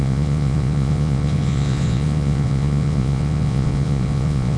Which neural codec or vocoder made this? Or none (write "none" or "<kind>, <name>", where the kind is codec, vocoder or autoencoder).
vocoder, Vocos